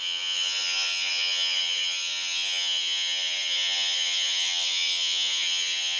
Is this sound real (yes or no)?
no